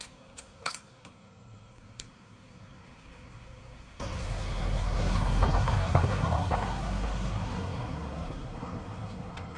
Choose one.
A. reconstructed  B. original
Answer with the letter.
A